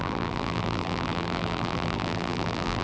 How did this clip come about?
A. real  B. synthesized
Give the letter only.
B